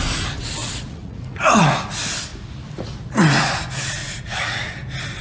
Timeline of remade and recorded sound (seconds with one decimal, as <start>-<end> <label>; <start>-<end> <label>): 0.0-0.6 recorded; 0.6-1.6 remade; 1.6-4.0 recorded; 4.0-4.7 remade; 4.7-5.2 recorded